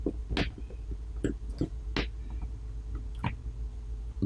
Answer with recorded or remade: recorded